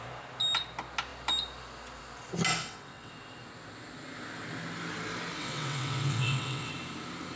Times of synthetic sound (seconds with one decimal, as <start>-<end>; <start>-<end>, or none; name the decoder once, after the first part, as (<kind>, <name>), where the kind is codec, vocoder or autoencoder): 2.6-3.1 (vocoder, WaveNeXt); 5.4-6.7